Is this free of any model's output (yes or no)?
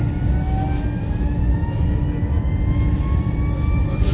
yes